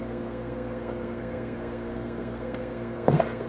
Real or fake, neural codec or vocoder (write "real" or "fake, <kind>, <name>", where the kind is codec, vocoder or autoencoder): fake, codec, SNAC